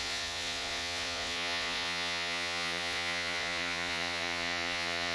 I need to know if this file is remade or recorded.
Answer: remade